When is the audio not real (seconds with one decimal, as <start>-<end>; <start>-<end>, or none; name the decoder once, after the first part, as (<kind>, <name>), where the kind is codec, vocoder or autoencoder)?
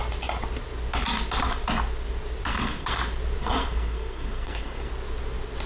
2.5-3.0 (codec, SNAC); 3.4-4.9